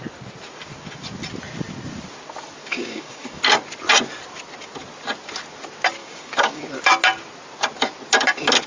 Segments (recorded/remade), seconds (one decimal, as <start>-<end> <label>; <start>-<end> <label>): 0.0-2.6 recorded; 2.6-3.4 remade; 3.4-6.0 recorded; 6.0-6.6 remade; 6.6-8.7 recorded